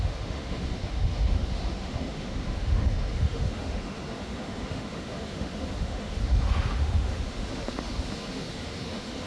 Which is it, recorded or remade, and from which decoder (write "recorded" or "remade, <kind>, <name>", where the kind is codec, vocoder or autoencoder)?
remade, autoencoder, DAC-VAE